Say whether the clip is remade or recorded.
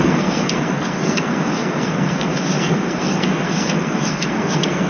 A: remade